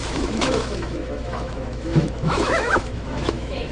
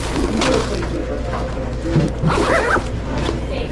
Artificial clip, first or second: first